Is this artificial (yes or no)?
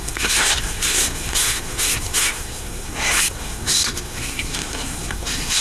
yes